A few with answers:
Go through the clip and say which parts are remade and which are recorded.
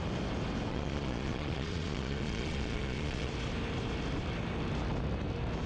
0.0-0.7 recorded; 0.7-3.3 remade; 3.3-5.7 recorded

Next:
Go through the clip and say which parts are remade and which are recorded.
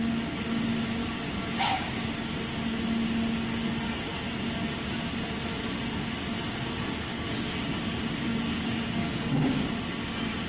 0.0-1.0 recorded; 1.0-2.3 remade; 2.3-7.1 recorded; 7.1-9.7 remade; 9.7-10.5 recorded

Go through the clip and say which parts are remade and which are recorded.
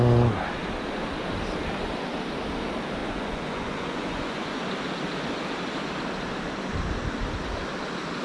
0.0-3.0 recorded; 3.0-4.6 remade; 4.6-8.2 recorded